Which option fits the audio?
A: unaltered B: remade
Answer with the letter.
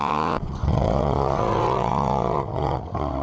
B